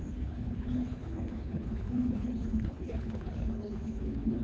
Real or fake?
fake